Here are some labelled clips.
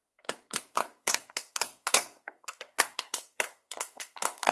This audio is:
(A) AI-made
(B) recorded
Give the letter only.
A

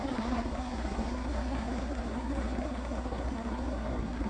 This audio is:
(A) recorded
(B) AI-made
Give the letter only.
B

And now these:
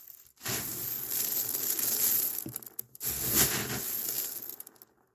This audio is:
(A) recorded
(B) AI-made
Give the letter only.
A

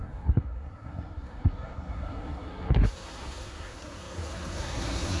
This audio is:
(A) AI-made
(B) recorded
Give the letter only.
A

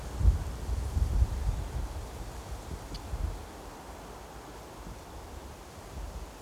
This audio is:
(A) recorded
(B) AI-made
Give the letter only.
A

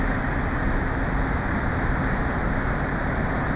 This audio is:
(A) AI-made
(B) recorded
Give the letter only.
B